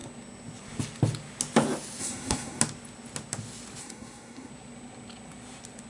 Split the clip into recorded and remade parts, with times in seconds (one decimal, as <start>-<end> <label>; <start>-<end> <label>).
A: 0.0-2.0 recorded; 2.0-2.6 remade; 2.6-3.8 recorded; 3.8-4.5 remade; 4.5-5.9 recorded